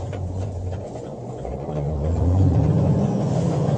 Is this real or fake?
fake